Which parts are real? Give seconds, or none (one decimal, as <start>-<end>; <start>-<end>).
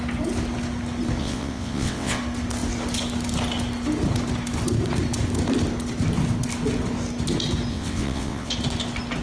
0.0-1.2; 2.2-7.7; 8.5-9.2